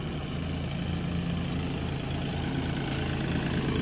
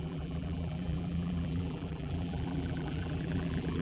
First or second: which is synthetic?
second